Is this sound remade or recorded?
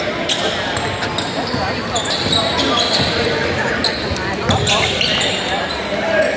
recorded